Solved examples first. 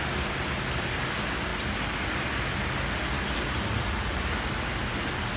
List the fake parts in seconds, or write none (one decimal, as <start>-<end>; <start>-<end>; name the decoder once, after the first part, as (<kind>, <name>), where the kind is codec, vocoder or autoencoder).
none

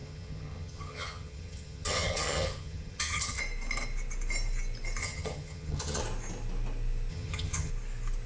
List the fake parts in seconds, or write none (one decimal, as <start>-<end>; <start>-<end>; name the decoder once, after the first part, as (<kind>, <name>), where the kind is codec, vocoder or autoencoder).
0.0-3.4 (vocoder, HiFi-GAN); 5.0-6.0; 7.1-7.7

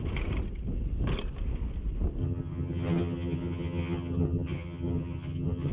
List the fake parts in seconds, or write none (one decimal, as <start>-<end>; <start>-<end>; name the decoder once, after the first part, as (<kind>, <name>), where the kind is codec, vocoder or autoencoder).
2.2-5.7 (vocoder, HiFi-GAN)